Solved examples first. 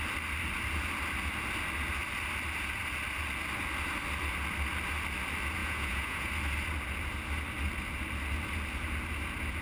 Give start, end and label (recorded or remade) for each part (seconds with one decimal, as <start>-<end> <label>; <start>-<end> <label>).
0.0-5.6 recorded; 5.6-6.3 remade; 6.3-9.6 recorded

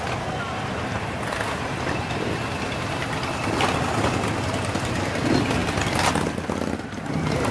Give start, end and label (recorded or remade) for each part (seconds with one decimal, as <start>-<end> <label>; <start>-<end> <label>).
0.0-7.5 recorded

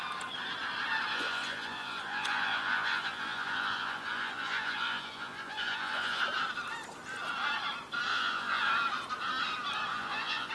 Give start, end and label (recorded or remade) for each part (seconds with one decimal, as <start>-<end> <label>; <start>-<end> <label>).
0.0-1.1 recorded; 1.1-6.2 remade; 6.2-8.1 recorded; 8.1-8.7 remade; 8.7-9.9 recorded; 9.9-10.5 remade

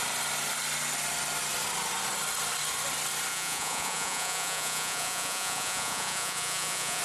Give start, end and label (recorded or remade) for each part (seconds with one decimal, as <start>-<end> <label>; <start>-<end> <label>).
0.0-3.3 recorded; 3.3-7.0 remade

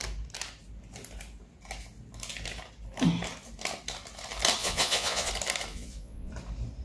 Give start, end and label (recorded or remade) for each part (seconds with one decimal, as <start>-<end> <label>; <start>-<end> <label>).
0.0-4.6 recorded; 4.6-5.3 remade; 5.3-5.7 recorded; 5.7-6.3 remade; 6.3-6.8 recorded

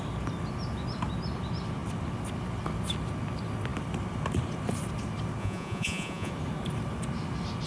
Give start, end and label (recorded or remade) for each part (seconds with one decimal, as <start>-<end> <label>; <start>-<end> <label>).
0.0-5.4 recorded; 5.4-6.3 remade; 6.3-7.7 recorded

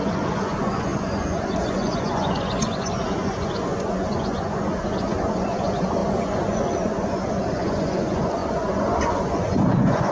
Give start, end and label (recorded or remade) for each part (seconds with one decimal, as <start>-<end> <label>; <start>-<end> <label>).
0.0-10.1 remade